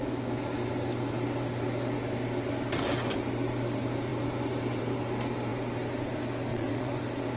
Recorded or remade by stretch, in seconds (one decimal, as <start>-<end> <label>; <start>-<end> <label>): 0.0-6.5 recorded; 6.5-7.0 remade; 7.0-7.4 recorded